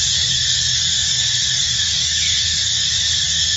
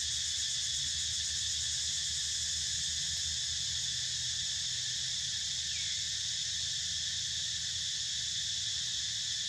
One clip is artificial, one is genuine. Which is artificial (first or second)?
first